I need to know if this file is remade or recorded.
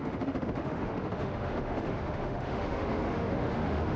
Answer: remade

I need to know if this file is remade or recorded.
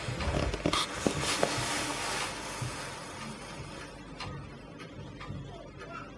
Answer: recorded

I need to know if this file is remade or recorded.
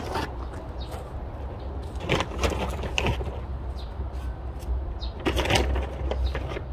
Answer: recorded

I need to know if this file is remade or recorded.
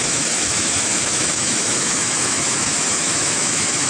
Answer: remade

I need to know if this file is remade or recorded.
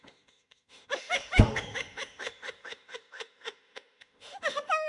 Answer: remade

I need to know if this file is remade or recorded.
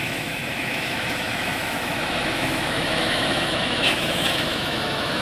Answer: remade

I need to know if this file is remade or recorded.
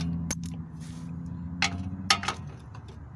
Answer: recorded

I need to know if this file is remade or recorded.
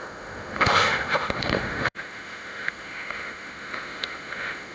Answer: remade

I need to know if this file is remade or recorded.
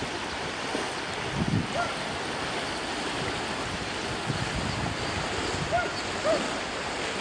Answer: recorded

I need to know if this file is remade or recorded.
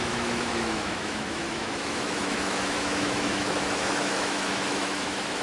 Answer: remade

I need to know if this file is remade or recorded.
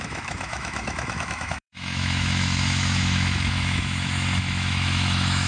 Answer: remade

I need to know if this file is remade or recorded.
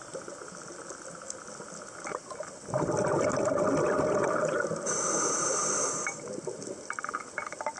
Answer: recorded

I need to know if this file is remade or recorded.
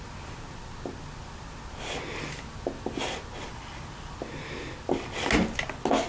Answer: recorded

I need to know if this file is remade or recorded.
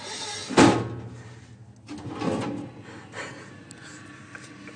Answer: recorded